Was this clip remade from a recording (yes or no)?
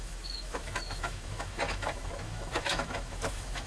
yes